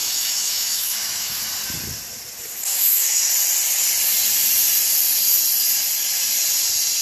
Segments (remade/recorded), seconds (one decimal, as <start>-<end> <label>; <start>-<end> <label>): 0.0-1.4 remade; 1.4-2.7 recorded; 2.7-3.3 remade; 3.3-7.0 recorded